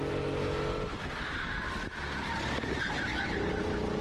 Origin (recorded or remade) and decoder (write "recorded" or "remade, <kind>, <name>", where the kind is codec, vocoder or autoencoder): recorded